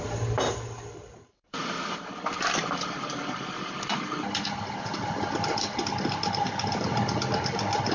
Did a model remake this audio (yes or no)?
yes